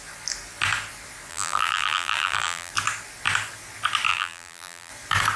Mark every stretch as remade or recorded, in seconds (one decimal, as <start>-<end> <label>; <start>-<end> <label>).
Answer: 0.0-1.3 recorded; 1.3-2.7 remade; 2.7-4.1 recorded; 4.1-4.9 remade; 4.9-5.4 recorded